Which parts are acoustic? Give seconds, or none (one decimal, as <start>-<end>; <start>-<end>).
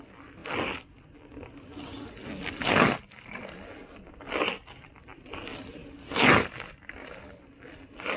0.0-8.2